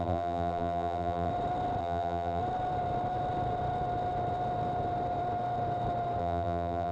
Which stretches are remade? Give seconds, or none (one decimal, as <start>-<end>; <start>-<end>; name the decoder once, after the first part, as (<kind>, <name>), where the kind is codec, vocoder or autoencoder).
0.0-1.3 (vocoder, BigVGAN v2); 1.8-2.4; 6.2-6.9